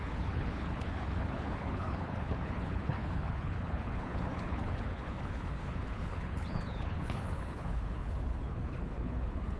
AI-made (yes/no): yes